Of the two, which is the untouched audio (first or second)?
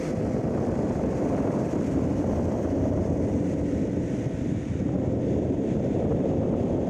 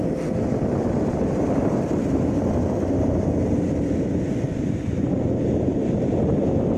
second